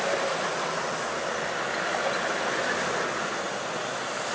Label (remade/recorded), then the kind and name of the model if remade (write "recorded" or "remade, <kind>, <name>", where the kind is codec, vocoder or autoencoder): recorded